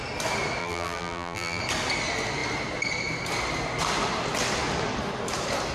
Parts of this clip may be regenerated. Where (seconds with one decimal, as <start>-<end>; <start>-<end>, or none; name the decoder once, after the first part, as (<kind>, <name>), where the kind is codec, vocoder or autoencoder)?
0.6-1.6 (vocoder, BigVGAN v2)